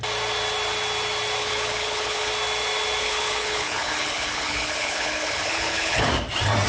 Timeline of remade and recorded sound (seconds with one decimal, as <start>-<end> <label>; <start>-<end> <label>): 0.0-1.4 recorded; 1.4-2.3 remade; 2.3-3.0 recorded; 3.0-6.1 remade; 6.1-6.7 recorded